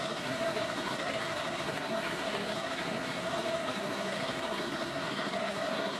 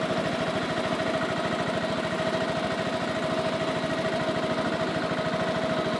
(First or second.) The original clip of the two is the second